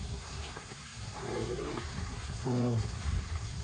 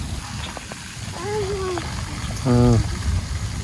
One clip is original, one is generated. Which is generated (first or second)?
first